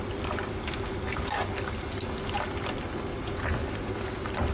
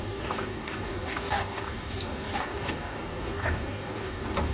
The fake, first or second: second